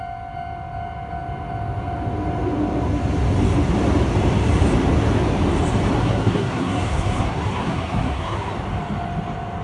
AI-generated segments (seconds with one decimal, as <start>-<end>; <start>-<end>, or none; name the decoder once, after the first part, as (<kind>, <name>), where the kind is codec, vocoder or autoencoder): 6.0-8.5 (codec, SNAC)